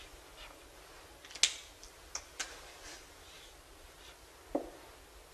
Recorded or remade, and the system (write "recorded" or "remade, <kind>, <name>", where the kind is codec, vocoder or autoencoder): recorded